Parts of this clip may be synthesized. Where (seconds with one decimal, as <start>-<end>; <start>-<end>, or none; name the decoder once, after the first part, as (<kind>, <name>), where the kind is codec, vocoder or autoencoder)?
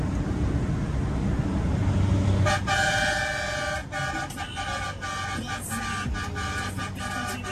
none